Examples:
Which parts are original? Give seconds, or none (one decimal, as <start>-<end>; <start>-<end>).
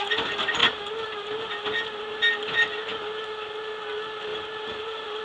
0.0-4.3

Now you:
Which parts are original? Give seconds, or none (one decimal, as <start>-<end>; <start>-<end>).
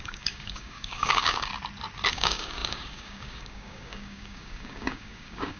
1.5-2.1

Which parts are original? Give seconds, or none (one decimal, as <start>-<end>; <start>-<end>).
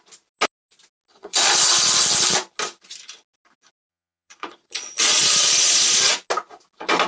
0.0-1.1; 1.7-3.9; 6.3-7.1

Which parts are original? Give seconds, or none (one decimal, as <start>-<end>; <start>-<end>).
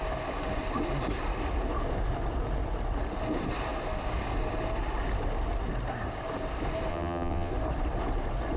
0.0-6.9; 7.5-8.6